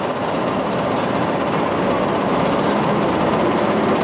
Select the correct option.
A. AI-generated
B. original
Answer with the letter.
B